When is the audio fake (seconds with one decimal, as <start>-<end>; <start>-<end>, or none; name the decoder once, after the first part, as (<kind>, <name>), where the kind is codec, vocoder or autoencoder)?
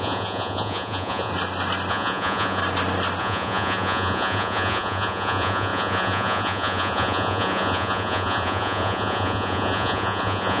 0.0-1.3 (vocoder, Vocos); 1.9-2.6; 3.2-10.6